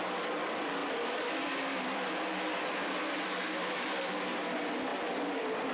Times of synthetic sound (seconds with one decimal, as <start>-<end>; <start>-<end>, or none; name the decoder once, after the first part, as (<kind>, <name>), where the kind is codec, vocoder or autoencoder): 0.8-4.1 (vocoder, BigVGAN v2); 4.9-5.7